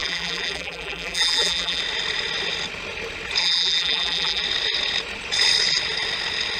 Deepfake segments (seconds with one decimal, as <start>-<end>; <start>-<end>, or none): 0.0-1.8; 3.4-4.4